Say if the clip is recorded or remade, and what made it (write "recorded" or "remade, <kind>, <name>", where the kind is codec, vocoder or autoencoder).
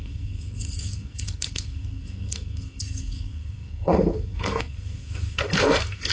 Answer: remade, codec, SNAC